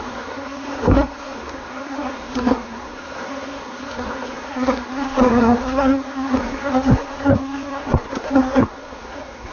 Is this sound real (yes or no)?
no